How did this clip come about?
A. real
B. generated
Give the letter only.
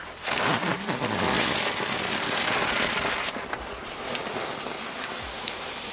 A